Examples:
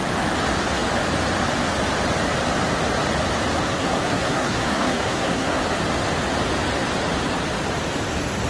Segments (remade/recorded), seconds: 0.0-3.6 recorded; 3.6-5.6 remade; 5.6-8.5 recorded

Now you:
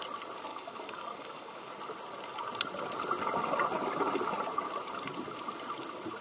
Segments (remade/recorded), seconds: 0.0-0.5 recorded; 0.5-1.7 remade; 1.7-6.2 recorded

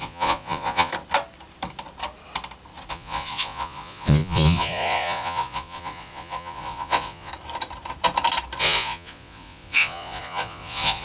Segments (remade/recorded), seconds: 0.0-0.9 remade; 0.9-2.9 recorded; 2.9-7.3 remade; 7.3-8.6 recorded; 8.6-11.0 remade

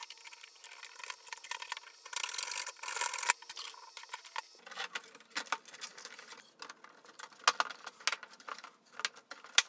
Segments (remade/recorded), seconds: 0.0-9.7 recorded

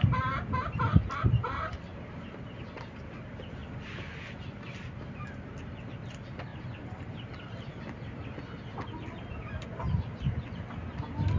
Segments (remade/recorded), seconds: 0.0-1.9 recorded; 1.9-2.4 remade; 2.4-3.6 recorded; 3.6-5.6 remade; 5.6-6.5 recorded; 6.5-9.3 remade; 9.3-11.4 recorded

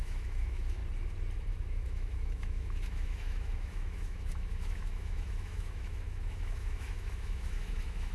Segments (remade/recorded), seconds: 0.0-0.8 remade; 0.8-1.5 recorded; 1.5-8.1 remade